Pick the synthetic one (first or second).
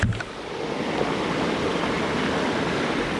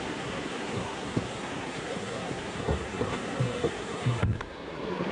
second